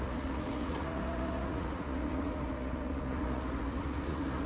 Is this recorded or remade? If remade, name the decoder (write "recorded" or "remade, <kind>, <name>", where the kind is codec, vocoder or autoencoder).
remade, vocoder, Vocos